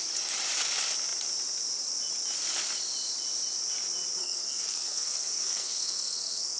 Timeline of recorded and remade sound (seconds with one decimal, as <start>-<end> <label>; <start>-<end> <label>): 0.0-4.2 recorded; 4.2-6.6 remade

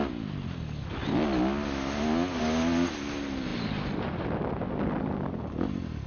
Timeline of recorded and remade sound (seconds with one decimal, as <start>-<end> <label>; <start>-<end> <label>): 0.0-6.1 recorded

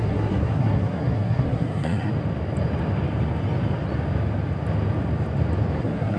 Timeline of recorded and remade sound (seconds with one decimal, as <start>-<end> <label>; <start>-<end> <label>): 0.0-2.1 remade; 2.1-5.8 recorded; 5.8-6.2 remade

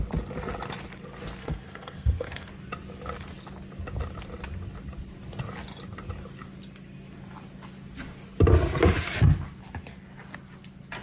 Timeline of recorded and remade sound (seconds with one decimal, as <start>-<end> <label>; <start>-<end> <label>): 0.0-1.4 recorded; 1.4-2.5 remade; 2.5-11.0 recorded

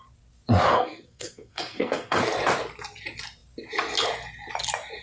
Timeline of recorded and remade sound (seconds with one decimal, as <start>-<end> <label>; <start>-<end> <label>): 0.0-0.7 recorded; 0.7-2.2 remade; 2.2-5.0 recorded

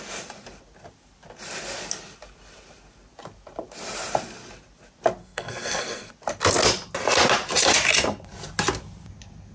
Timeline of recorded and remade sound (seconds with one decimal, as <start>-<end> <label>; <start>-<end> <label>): 0.0-5.2 recorded; 5.2-6.1 remade; 6.1-9.5 recorded

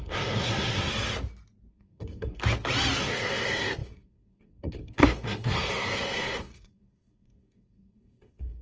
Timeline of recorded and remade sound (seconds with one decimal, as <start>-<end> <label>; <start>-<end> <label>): 0.0-0.9 remade; 0.9-1.7 recorded; 1.7-2.4 remade; 2.4-3.0 recorded; 3.0-8.6 remade

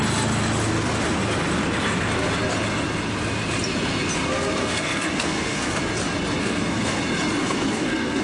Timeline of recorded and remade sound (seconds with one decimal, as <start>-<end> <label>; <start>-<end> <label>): 0.0-4.6 recorded; 4.6-5.8 remade; 5.8-6.4 recorded; 6.4-7.0 remade; 7.0-7.4 recorded; 7.4-8.2 remade